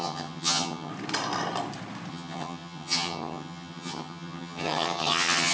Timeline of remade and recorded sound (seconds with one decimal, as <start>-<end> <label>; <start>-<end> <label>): 0.0-0.9 remade; 0.9-2.1 recorded; 2.1-5.5 remade